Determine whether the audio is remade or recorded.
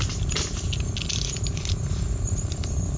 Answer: recorded